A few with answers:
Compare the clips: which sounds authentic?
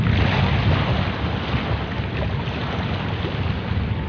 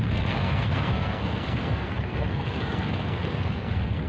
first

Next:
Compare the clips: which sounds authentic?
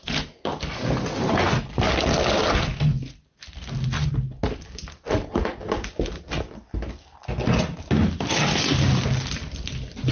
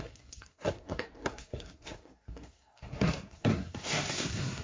first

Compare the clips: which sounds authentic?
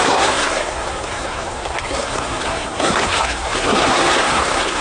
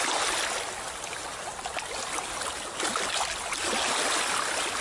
second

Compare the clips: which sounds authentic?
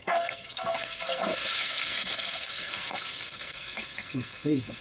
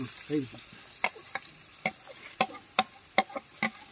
second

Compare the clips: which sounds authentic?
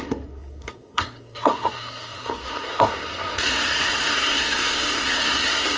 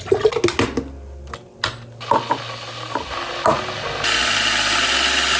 second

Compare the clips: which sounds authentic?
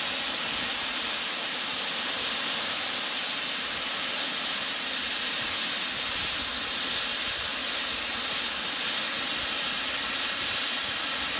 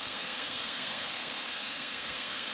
first